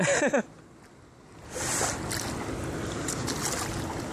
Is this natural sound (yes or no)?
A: yes